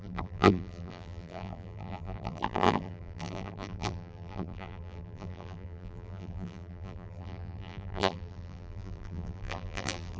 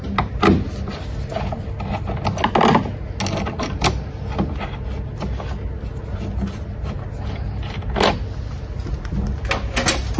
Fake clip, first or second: first